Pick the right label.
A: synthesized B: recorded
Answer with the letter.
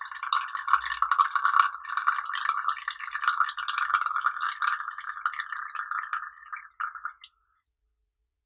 B